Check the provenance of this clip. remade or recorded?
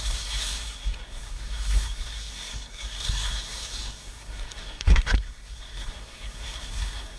remade